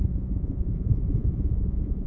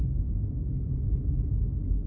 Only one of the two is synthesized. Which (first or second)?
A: first